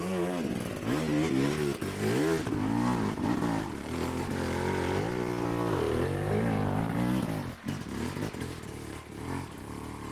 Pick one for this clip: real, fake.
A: real